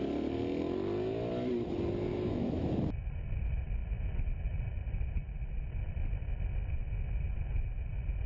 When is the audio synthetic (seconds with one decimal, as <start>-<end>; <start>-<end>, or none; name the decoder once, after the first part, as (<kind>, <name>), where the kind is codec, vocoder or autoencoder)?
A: 2.1-2.7 (autoencoder, DAC-VAE)